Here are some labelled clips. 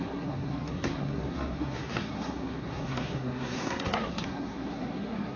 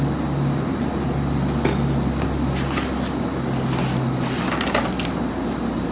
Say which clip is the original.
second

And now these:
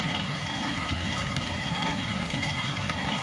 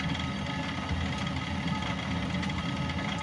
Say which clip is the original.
second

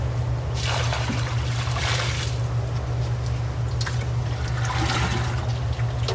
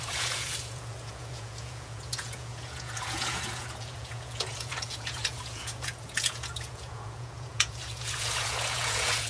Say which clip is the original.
first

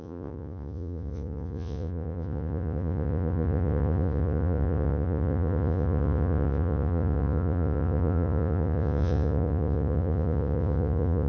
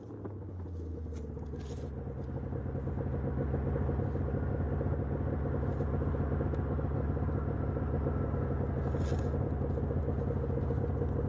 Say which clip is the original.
second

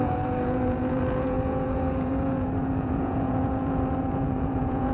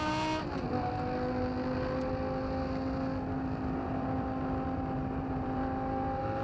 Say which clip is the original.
second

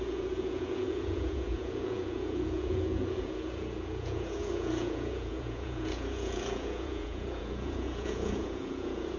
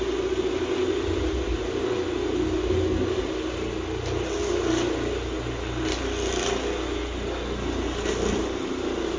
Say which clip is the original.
second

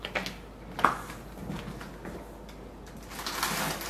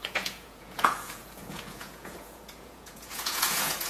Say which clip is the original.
first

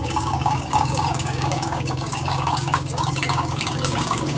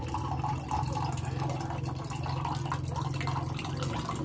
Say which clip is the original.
second